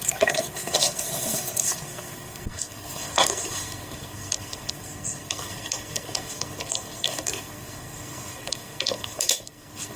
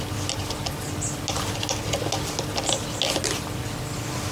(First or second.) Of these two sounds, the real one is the second